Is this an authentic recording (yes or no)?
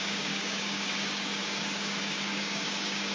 no